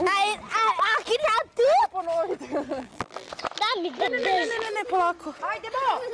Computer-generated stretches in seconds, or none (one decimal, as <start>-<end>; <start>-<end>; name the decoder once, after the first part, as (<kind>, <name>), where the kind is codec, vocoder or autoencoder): 2.7-3.3 (vocoder, BigVGAN v2); 4.2-4.7